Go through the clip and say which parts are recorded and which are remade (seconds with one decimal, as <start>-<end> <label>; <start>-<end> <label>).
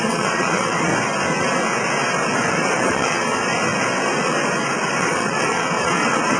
0.0-0.9 remade; 0.9-2.5 recorded; 2.5-3.4 remade; 3.4-5.0 recorded; 5.0-6.4 remade